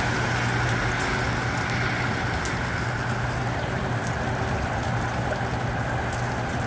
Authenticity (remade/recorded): recorded